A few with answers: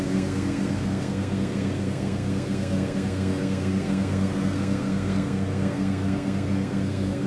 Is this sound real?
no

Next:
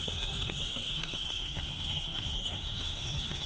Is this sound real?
no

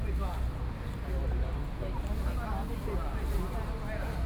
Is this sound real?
yes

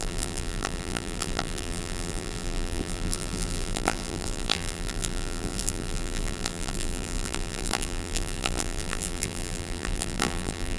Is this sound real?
no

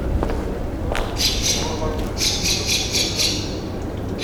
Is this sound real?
yes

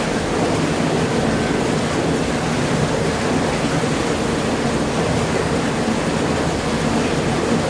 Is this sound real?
yes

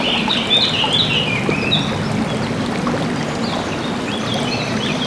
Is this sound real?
yes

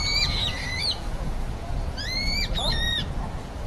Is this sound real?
no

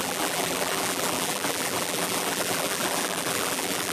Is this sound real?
no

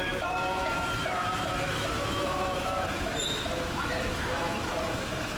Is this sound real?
no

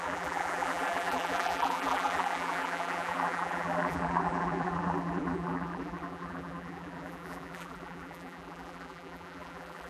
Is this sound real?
no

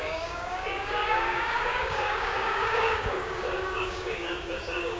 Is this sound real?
no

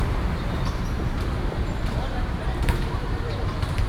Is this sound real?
no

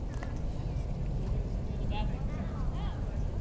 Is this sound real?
yes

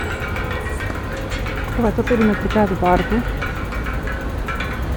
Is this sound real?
yes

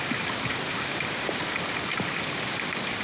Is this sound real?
no